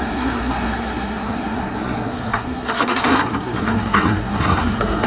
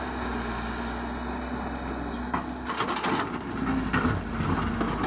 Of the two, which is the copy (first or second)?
first